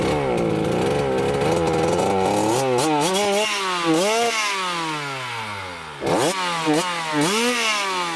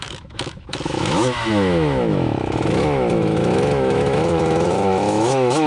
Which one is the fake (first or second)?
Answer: second